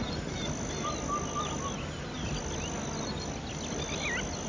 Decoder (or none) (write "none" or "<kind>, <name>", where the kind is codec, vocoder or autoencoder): none